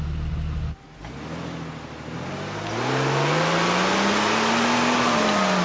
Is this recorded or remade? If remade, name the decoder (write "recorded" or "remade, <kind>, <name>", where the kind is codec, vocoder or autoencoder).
recorded